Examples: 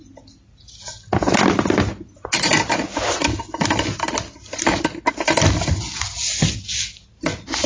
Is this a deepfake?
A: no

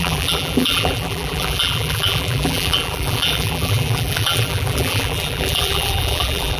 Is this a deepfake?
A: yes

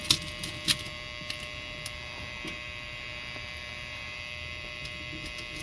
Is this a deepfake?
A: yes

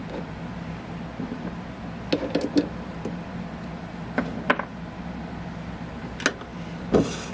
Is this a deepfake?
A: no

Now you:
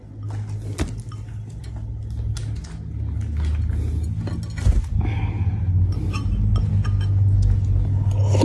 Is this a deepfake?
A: no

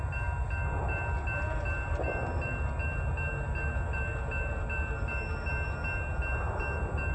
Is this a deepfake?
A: no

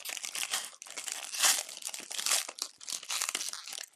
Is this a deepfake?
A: no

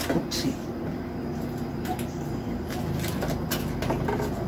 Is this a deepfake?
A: no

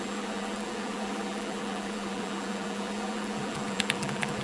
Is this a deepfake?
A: yes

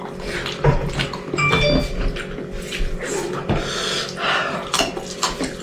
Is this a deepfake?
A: no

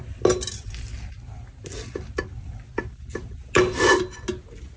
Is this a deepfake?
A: no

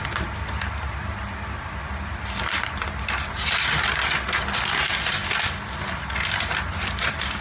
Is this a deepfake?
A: no